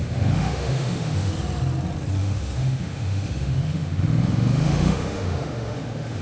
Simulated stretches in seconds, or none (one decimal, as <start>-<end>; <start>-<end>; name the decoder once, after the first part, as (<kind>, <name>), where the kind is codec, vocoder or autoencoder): 0.0-1.3 (autoencoder, DAC-VAE); 2.2-6.2